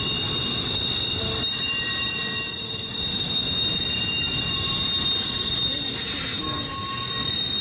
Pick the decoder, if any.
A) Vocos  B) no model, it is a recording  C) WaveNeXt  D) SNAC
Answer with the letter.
B